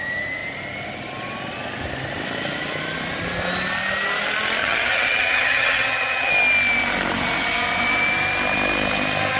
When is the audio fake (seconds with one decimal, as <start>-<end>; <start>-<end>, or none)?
4.6-6.3